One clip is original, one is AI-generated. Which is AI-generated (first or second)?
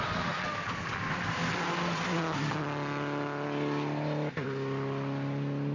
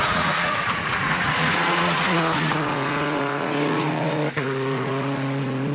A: second